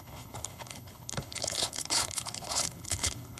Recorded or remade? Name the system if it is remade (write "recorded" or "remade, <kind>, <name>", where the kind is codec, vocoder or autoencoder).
remade, codec, HILCodec